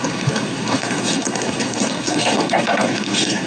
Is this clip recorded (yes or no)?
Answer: no